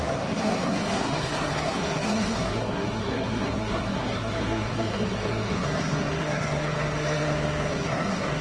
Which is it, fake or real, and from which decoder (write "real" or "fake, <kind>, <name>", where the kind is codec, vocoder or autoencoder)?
fake, codec, SNAC